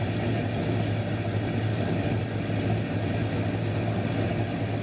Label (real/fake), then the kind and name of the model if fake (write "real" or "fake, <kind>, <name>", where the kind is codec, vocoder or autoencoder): real